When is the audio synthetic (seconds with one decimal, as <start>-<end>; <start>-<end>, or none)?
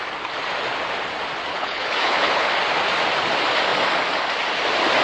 1.5-2.5